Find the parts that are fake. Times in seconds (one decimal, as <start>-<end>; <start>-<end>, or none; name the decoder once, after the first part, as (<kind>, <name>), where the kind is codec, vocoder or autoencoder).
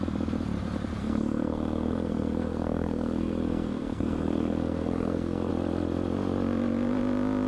1.0-5.5 (codec, SNAC)